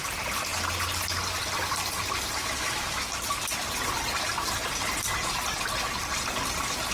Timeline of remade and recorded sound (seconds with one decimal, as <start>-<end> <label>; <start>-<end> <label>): 0.0-2.4 recorded; 2.4-3.1 remade; 3.1-6.9 recorded